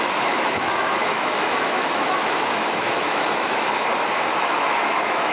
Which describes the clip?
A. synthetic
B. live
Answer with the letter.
A